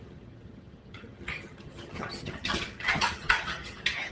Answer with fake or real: fake